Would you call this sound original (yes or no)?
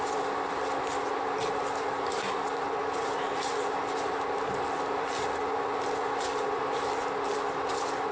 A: yes